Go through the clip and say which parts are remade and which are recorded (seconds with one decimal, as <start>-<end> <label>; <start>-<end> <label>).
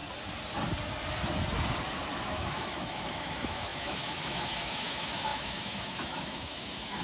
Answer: 0.0-2.2 recorded; 2.2-7.0 remade